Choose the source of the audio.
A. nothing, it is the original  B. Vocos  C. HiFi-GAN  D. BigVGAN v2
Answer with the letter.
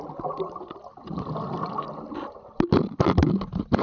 A